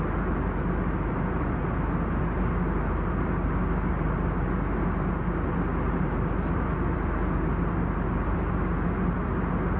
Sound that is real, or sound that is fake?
real